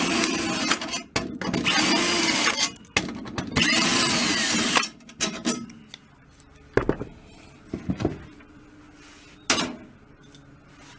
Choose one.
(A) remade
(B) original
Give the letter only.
B